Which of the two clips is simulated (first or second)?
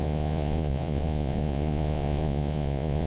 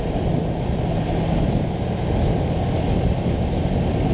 first